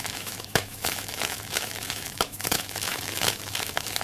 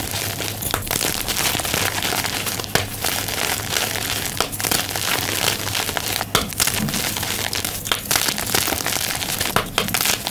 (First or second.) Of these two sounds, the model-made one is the first